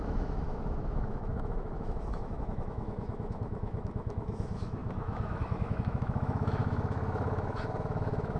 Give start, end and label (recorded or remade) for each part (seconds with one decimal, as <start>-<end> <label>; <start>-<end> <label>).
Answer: 0.0-8.4 remade